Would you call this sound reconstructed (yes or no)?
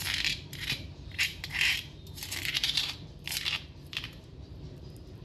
yes